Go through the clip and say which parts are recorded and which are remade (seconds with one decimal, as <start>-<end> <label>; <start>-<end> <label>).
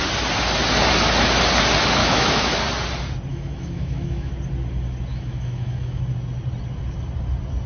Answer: 0.0-2.0 recorded; 2.0-2.6 remade; 2.6-3.3 recorded; 3.3-4.3 remade; 4.3-5.1 recorded; 5.1-6.0 remade; 6.0-7.7 recorded